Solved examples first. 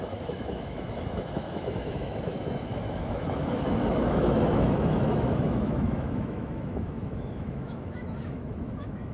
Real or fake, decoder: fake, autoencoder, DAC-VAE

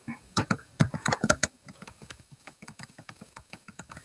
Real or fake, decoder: fake, codec, DAC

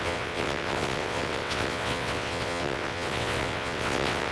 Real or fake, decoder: fake, vocoder, WaveNeXt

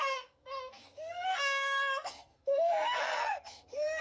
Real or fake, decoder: fake, codec, SNAC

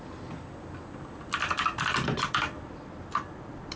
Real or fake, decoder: real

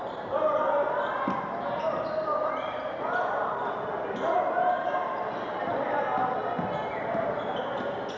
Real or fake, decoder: real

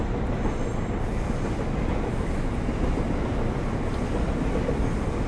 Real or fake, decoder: real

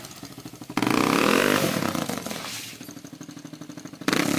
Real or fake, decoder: real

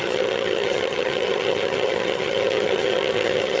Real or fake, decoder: fake, vocoder, HiFi-GAN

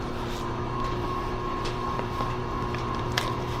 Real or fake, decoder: fake, vocoder, BigVGAN v2